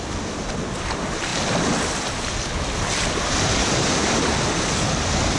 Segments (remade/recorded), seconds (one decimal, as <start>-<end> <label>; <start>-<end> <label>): 0.0-3.6 recorded; 3.6-4.3 remade; 4.3-5.4 recorded